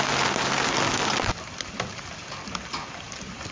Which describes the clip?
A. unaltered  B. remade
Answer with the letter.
A